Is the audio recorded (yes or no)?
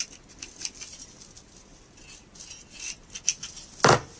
yes